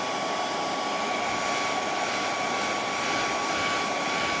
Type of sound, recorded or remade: recorded